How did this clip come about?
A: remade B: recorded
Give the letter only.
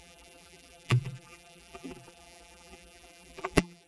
A